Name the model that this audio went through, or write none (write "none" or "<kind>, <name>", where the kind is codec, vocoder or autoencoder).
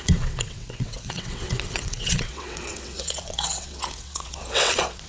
vocoder, WaveNeXt